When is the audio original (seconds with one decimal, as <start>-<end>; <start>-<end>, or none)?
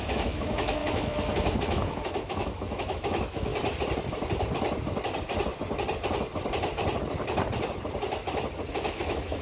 3.5-8.7